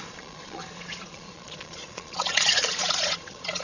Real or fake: fake